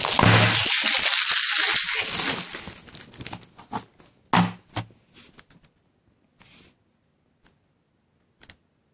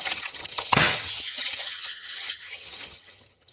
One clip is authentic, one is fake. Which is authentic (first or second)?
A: first